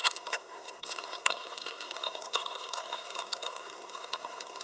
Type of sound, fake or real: fake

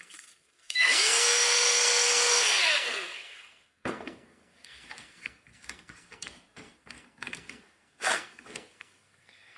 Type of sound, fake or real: fake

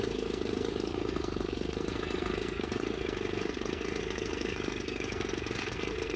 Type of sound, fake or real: fake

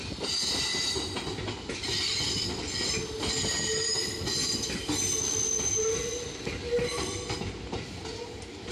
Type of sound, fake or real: real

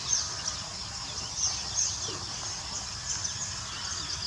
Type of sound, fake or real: real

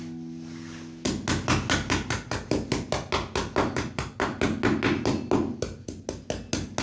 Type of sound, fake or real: real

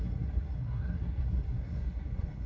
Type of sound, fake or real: fake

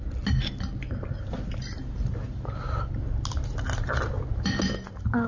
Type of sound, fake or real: real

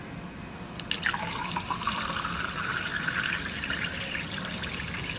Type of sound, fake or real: real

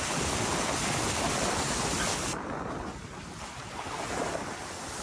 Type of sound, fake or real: real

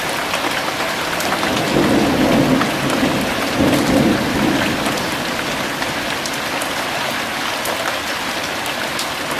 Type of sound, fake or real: real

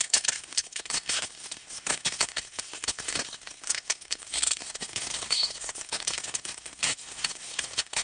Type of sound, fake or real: fake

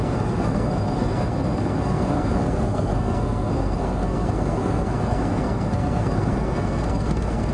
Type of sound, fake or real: fake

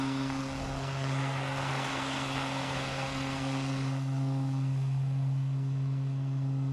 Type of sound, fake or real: fake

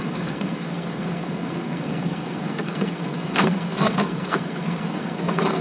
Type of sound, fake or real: fake